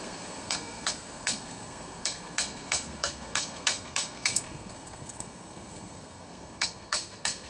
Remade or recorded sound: remade